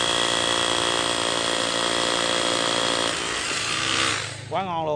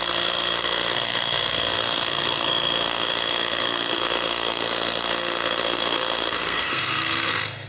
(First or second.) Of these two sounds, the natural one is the first